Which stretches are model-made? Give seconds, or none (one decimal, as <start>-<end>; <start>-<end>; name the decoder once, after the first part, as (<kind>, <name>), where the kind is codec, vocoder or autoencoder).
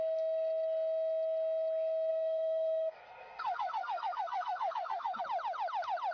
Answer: 2.1-5.2 (codec, SNAC)